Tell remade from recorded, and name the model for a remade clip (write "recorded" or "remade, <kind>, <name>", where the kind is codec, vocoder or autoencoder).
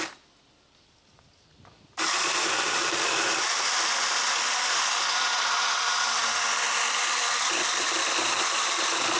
recorded